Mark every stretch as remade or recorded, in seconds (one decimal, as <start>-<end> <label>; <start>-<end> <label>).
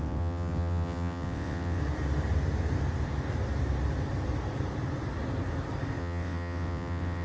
0.0-1.8 remade; 1.8-6.0 recorded; 6.0-7.2 remade